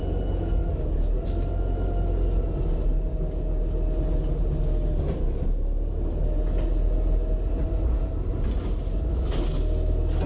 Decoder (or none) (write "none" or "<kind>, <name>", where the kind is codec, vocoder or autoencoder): none